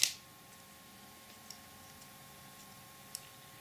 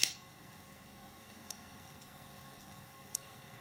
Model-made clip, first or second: second